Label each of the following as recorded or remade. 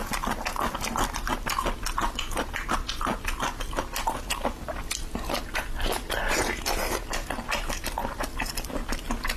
recorded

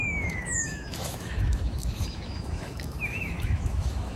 remade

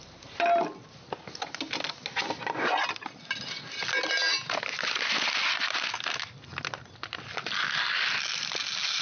recorded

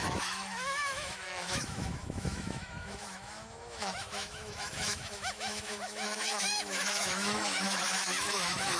remade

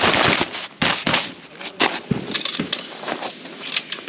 recorded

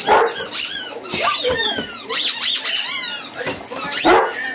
recorded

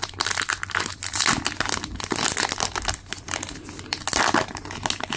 recorded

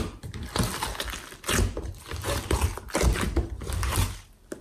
recorded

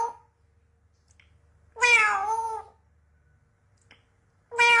recorded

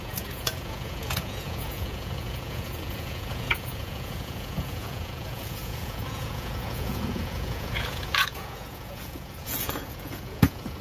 remade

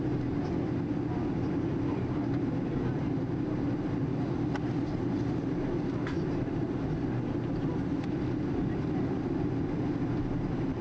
recorded